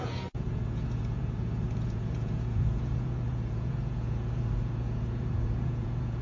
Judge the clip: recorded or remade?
remade